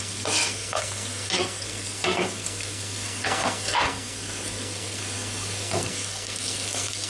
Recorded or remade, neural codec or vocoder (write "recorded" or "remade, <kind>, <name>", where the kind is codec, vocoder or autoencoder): remade, codec, SNAC